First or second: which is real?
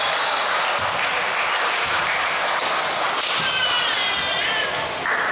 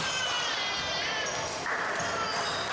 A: second